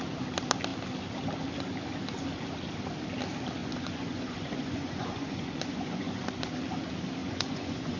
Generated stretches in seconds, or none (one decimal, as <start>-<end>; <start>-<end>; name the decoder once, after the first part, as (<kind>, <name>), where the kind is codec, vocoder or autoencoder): 3.6-6.2 (vocoder, Vocos); 7.2-8.0